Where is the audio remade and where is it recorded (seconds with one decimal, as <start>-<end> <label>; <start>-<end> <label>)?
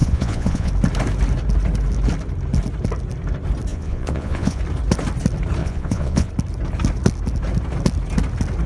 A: 0.0-0.7 remade; 0.7-3.7 recorded; 3.7-4.6 remade; 4.6-5.6 recorded; 5.6-6.3 remade; 6.3-8.7 recorded